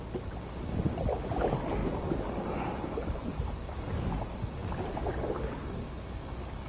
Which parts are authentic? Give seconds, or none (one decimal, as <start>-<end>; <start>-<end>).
0.0-6.7